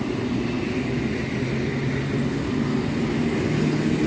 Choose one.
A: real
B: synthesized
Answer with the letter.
A